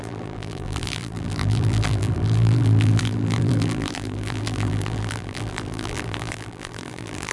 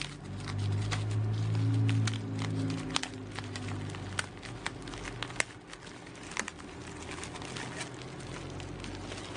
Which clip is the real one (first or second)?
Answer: second